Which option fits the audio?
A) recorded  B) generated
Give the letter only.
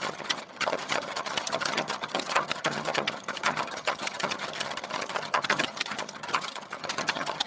B